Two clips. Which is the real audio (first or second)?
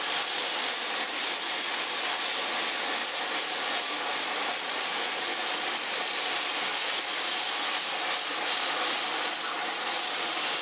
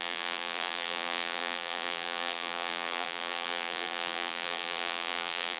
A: first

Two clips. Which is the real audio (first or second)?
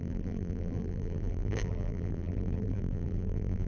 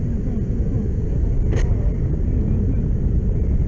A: second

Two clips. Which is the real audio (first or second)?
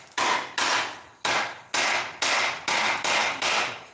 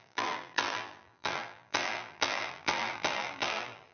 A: first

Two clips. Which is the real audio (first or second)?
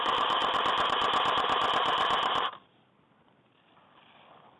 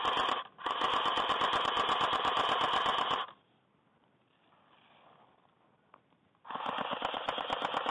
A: second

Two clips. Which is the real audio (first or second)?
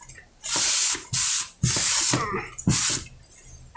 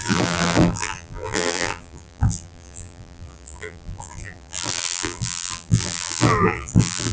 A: first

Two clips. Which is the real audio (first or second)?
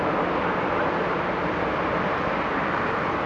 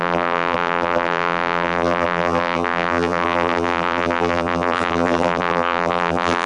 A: first